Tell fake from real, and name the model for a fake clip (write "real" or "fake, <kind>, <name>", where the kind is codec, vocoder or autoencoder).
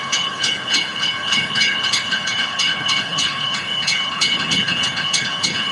fake, codec, HILCodec